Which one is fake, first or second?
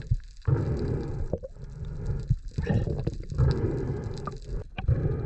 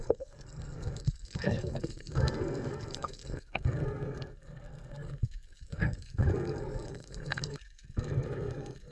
second